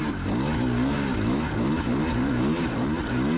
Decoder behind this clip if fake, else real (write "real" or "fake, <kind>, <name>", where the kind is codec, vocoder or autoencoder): real